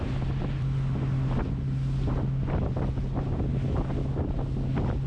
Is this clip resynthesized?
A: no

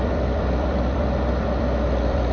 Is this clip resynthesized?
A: yes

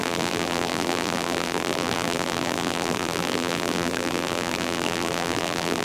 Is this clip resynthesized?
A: yes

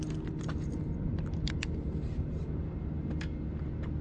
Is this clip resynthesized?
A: yes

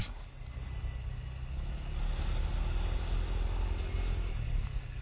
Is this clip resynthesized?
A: no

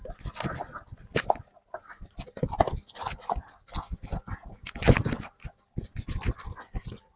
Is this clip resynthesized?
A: no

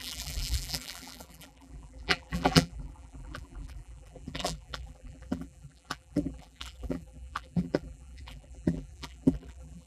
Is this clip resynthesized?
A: yes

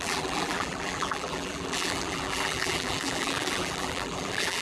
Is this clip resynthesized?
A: yes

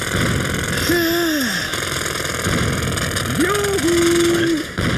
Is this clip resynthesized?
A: no